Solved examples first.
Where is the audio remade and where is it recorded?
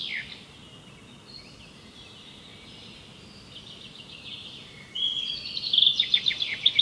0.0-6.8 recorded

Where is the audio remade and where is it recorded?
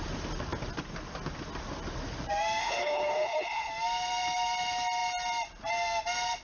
0.0-2.6 recorded; 2.6-3.7 remade; 3.7-6.4 recorded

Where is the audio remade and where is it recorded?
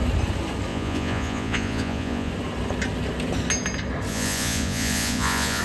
0.0-0.7 recorded; 0.7-2.3 remade; 2.3-4.1 recorded; 4.1-5.6 remade